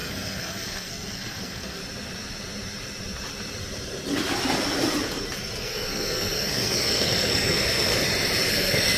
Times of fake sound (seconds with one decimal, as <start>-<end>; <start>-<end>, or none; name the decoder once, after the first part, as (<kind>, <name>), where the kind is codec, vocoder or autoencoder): 0.0-1.8 (codec, SNAC); 5.6-7.9; 8.5-9.0